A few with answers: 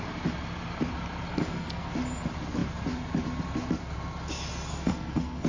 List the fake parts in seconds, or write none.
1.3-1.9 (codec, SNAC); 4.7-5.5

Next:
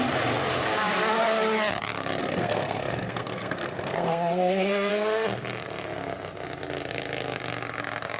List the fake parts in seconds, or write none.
2.2-4.9 (codec, SNAC)

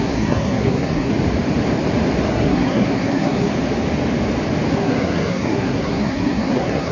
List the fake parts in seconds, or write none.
0.0-1.1 (codec, SNAC); 2.3-3.5; 4.7-6.9

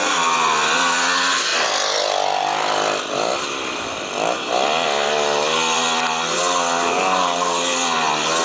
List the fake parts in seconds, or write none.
none